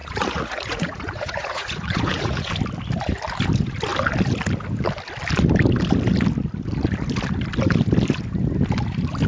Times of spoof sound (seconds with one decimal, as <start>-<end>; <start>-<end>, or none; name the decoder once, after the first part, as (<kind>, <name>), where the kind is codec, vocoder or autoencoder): 0.0-2.5 (vocoder, Vocos)